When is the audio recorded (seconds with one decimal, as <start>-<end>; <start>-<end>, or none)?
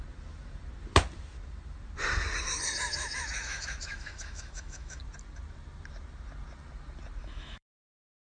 0.0-2.9; 5.0-7.2